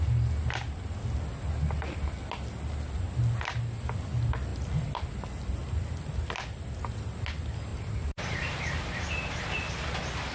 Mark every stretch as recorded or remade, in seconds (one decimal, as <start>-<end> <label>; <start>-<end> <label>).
0.0-4.5 recorded; 4.5-6.2 remade; 6.2-7.7 recorded; 7.7-9.4 remade; 9.4-10.3 recorded